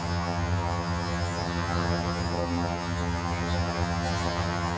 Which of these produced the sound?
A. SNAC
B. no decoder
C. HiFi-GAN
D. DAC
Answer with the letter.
C